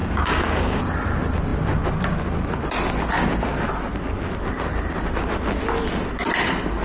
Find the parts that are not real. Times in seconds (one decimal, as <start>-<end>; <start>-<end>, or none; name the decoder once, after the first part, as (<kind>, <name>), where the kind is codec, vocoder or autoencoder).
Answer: 0.0-0.8 (codec, DAC)